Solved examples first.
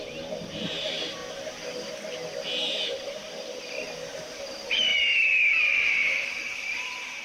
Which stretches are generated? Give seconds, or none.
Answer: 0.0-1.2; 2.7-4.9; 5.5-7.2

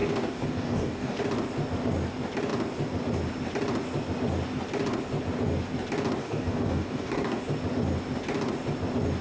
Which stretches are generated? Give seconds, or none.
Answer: 0.0-1.2; 6.2-7.4

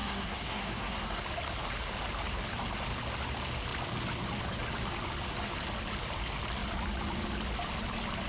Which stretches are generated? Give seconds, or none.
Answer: 0.0-1.2

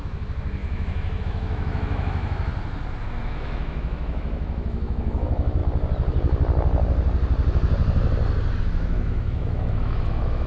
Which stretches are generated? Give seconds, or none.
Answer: 0.0-2.5; 3.0-5.6; 8.6-10.5

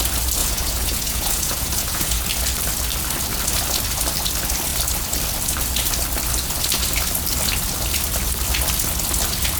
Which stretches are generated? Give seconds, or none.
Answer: 0.4-2.2

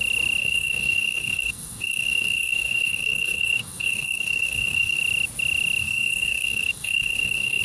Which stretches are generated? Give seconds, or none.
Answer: 0.4-5.0; 5.8-7.6